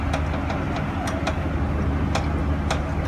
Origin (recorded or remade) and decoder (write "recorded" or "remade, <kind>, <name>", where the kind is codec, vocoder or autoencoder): recorded